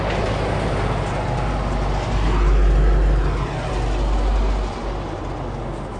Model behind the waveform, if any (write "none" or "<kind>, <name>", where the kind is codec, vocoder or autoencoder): none